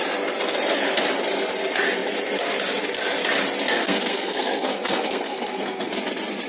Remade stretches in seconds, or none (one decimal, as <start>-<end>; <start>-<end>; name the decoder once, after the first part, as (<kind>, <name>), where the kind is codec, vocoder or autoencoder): 3.7-5.9 (codec, SNAC)